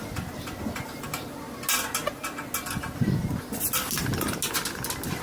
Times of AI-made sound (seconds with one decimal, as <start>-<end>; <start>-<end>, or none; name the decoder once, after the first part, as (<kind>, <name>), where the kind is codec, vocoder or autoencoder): none